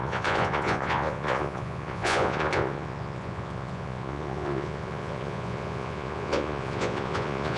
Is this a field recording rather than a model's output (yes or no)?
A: no